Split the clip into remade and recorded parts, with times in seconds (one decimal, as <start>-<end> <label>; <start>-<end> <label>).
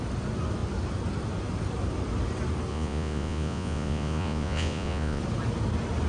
0.0-2.7 recorded; 2.7-5.2 remade; 5.2-6.1 recorded